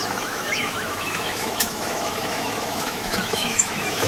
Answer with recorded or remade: remade